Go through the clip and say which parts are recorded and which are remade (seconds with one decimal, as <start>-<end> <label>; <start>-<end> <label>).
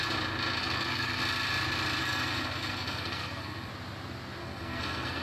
0.0-0.6 recorded; 0.6-1.2 remade; 1.2-2.0 recorded; 2.0-3.7 remade; 3.7-4.4 recorded; 4.4-5.2 remade